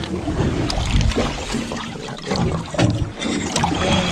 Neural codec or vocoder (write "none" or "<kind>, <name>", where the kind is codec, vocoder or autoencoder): none